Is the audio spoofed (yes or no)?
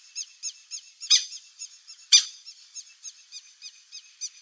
yes